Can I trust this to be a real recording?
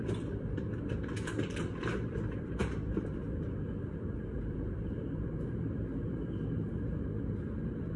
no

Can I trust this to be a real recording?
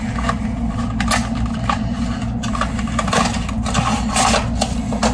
yes